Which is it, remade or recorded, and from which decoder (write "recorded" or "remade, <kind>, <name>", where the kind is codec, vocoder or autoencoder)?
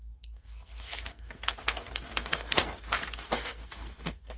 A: remade, codec, SNAC